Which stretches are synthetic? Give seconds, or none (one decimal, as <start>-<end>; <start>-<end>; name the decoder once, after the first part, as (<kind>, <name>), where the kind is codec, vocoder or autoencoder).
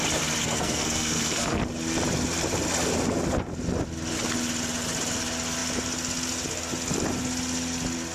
0.4-1.6 (codec, SNAC)